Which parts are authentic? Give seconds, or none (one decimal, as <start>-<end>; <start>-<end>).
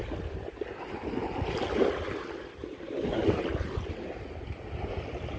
0.0-5.4